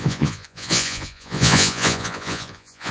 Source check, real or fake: fake